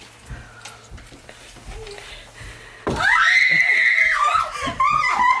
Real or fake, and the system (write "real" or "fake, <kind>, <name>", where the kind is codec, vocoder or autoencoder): real